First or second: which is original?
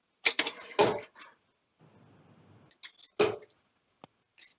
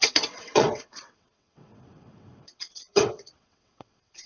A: first